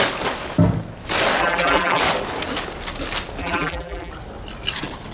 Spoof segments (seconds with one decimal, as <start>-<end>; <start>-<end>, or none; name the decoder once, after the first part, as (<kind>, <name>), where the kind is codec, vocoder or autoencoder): 1.4-2.0 (vocoder, BigVGAN v2); 3.4-4.1